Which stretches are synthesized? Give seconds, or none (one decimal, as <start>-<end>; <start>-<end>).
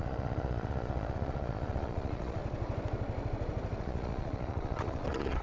0.0-2.4; 3.8-5.4